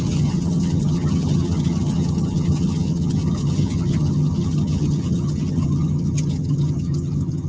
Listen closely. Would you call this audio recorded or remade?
remade